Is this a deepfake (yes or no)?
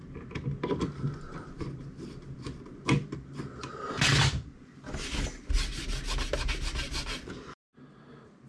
no